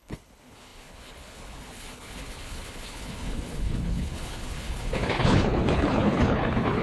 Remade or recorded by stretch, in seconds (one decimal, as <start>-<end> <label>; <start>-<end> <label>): 0.0-6.8 remade